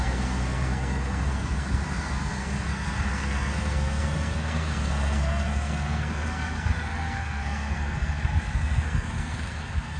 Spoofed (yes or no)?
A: yes